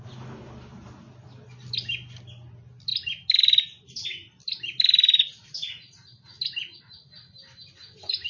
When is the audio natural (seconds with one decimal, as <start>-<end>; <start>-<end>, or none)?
0.0-8.3